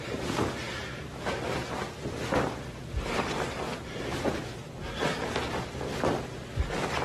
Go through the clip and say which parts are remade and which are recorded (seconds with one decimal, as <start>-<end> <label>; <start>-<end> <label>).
0.0-0.8 recorded; 0.8-1.4 remade; 1.4-7.0 recorded